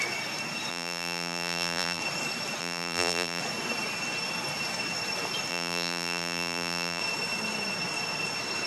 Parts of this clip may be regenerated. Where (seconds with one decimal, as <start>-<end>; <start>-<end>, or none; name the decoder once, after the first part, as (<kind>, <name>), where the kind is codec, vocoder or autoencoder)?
0.7-2.0 (vocoder, BigVGAN v2); 2.6-3.4; 5.5-7.0